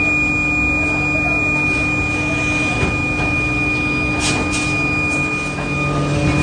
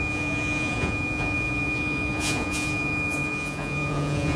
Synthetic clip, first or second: second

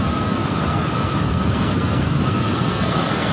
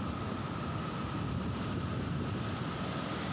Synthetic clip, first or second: first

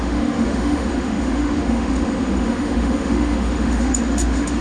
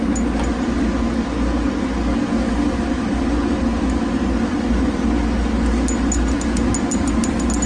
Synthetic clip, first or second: first